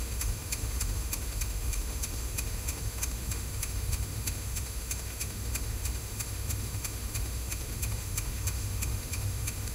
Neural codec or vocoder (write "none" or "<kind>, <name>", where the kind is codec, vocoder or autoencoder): autoencoder, DAC-VAE